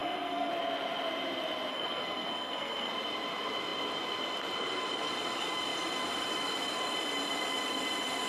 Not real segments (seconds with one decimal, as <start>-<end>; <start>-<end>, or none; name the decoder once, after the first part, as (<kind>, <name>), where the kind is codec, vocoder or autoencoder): 0.0-0.5 (codec, SNAC); 1.7-2.9

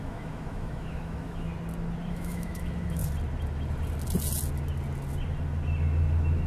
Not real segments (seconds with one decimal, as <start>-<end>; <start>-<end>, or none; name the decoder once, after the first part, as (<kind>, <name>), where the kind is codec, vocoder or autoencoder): 0.0-1.5 (autoencoder, DAC-VAE); 2.1-3.0

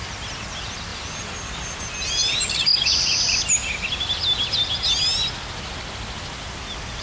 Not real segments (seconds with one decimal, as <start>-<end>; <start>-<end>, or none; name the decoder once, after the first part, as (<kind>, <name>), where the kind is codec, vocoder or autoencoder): 0.9-1.8 (vocoder, BigVGAN v2)

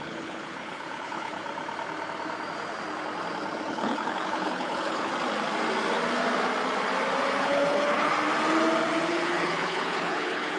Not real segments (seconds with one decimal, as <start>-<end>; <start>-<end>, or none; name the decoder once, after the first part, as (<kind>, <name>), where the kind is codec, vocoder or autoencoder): 0.0-1.4 (codec, HILCodec); 3.7-5.1; 7.4-8.1; 9.1-10.6

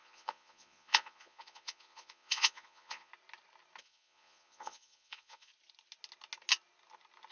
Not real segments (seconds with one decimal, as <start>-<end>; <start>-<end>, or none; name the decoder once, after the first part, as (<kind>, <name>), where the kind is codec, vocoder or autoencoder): 0.0-3.1 (vocoder, Vocos); 3.8-5.5

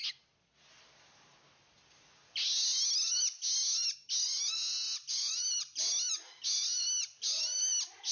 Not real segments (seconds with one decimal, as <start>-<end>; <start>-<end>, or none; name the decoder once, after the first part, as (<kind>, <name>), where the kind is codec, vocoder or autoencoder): none

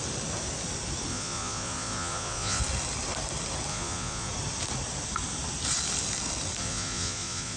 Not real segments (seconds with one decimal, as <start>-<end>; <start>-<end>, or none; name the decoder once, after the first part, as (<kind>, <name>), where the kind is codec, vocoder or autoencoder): 1.1-2.6 (vocoder, Vocos); 3.7-4.3; 6.6-7.6

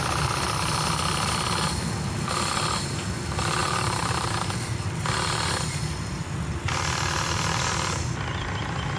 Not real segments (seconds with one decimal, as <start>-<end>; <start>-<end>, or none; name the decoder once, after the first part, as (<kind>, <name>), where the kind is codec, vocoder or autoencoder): 3.6-4.1 (vocoder, BigVGAN v2)